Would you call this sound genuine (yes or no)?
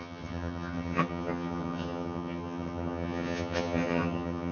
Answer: no